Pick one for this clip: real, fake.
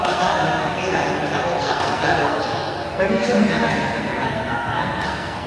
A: fake